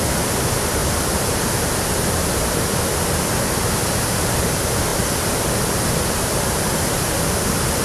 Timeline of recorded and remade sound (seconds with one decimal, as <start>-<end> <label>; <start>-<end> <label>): 0.0-7.8 recorded